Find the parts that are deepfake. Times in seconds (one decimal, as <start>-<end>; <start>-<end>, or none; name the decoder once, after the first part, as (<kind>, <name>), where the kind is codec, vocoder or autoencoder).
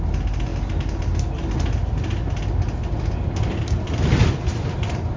none